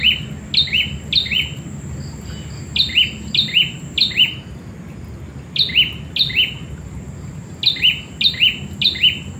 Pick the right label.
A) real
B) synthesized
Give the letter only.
A